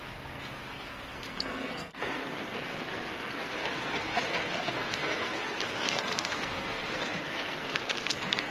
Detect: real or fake fake